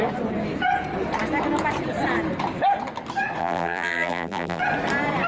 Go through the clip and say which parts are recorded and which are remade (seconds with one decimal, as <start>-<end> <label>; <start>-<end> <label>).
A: 0.0-3.4 recorded; 3.4-4.6 remade; 4.6-5.3 recorded